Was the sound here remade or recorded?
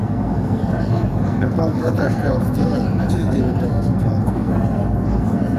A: remade